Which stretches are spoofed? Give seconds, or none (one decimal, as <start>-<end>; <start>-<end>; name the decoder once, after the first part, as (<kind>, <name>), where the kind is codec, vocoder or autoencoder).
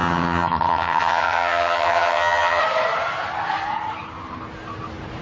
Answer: 0.0-2.6 (vocoder, HiFi-GAN)